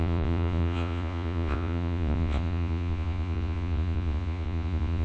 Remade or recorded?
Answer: remade